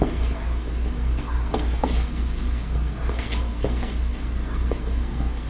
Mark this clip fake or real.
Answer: fake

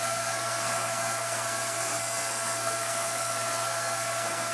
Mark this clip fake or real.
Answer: fake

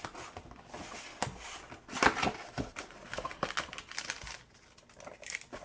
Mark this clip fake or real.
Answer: real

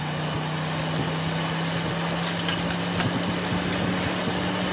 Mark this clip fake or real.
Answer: real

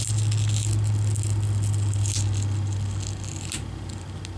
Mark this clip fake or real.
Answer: real